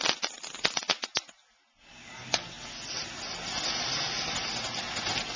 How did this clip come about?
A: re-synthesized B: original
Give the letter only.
B